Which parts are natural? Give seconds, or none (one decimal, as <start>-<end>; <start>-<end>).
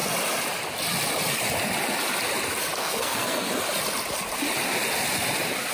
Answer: 0.0-2.8; 3.5-5.7